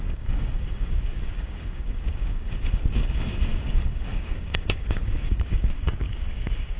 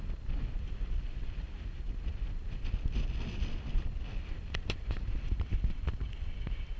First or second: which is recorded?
second